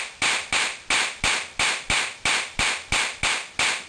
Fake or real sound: real